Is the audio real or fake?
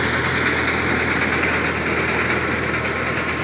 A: real